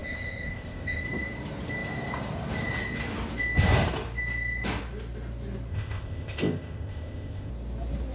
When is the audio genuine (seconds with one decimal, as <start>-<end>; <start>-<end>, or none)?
1.0-5.7; 7.5-8.1